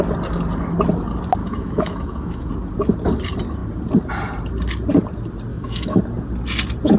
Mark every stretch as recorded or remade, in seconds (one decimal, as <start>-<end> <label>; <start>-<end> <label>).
0.0-1.4 recorded; 1.4-2.5 remade; 2.5-5.5 recorded; 5.5-6.0 remade; 6.0-7.0 recorded